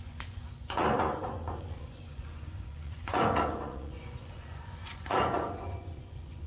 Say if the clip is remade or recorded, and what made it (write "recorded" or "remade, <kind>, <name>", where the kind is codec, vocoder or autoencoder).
remade, vocoder, Vocos